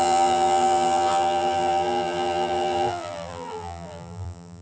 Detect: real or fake fake